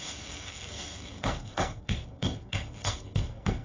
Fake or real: fake